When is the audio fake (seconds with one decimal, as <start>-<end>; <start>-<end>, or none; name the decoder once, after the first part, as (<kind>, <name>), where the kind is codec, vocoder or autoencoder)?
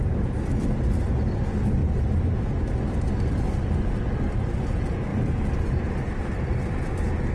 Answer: none